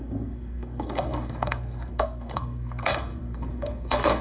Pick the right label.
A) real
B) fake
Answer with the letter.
B